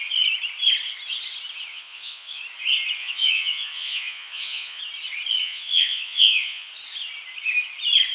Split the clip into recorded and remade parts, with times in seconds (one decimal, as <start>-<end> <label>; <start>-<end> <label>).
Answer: 0.0-1.7 recorded; 1.7-2.4 remade; 2.4-3.0 recorded; 3.0-4.8 remade; 4.8-5.4 recorded; 5.4-6.7 remade; 6.7-8.1 recorded